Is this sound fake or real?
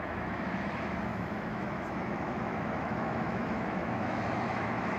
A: fake